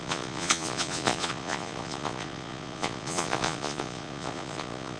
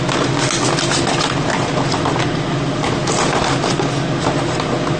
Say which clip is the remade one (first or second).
first